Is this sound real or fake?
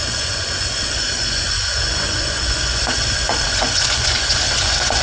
fake